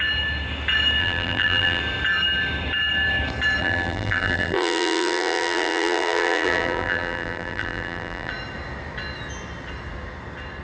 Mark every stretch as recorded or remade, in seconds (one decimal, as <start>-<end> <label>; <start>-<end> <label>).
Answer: 0.0-1.0 recorded; 1.0-1.8 remade; 1.8-3.6 recorded; 3.6-8.3 remade; 8.3-10.6 recorded